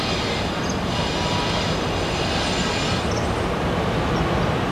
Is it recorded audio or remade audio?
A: recorded